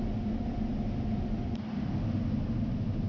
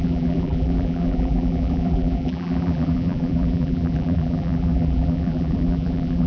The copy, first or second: second